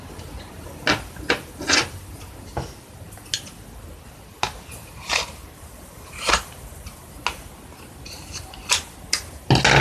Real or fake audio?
real